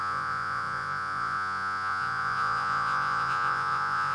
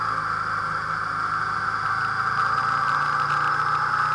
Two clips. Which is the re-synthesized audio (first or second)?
first